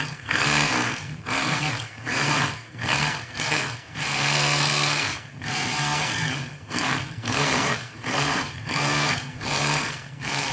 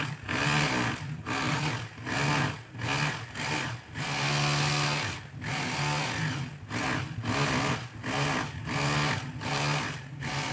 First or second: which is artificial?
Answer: first